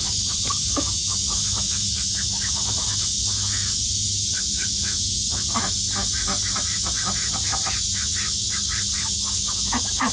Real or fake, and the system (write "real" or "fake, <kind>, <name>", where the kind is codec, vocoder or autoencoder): fake, autoencoder, DAC-VAE